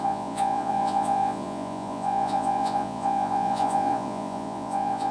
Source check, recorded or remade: remade